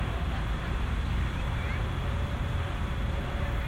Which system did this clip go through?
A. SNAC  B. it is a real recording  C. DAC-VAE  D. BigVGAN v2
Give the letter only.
D